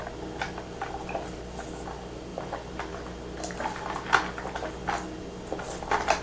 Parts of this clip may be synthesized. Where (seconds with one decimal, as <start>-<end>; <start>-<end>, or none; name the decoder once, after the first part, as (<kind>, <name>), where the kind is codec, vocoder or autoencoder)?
none